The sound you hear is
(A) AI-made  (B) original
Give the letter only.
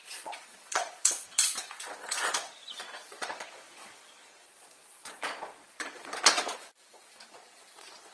A